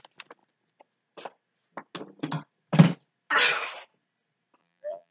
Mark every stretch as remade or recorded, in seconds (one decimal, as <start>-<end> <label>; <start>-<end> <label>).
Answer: 0.0-4.6 recorded; 4.6-5.1 remade